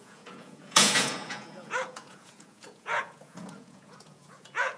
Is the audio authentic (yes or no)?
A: no